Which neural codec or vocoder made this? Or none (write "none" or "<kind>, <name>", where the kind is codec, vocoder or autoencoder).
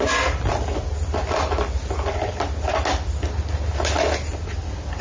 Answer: none